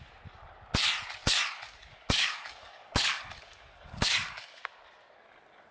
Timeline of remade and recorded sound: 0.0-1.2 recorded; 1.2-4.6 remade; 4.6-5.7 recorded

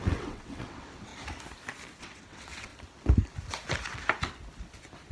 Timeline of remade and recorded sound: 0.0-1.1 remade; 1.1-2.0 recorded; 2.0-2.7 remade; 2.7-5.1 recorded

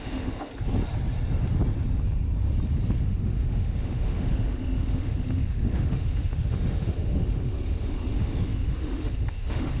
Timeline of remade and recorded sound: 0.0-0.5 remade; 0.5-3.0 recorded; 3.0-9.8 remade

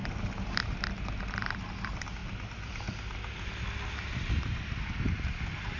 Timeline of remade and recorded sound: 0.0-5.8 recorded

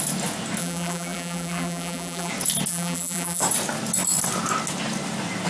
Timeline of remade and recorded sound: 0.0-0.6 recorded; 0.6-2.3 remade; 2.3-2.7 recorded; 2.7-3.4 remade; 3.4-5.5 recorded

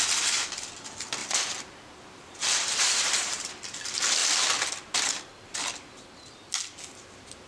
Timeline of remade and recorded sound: 0.0-1.2 recorded; 1.2-3.4 remade; 3.4-7.5 recorded

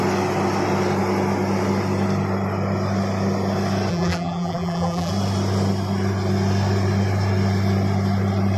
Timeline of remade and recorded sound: 0.0-3.9 recorded; 3.9-5.1 remade; 5.1-8.6 recorded

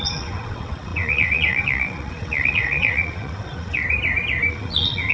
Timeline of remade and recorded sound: 0.0-3.8 remade; 3.8-4.5 recorded; 4.5-5.1 remade